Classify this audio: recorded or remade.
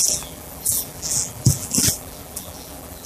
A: remade